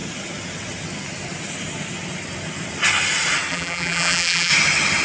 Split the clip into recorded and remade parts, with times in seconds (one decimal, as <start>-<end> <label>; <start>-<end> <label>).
0.0-3.5 recorded; 3.5-4.5 remade; 4.5-5.0 recorded